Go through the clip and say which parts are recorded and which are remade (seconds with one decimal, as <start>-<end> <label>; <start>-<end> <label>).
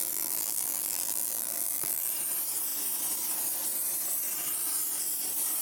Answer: 0.0-2.1 remade; 2.1-5.6 recorded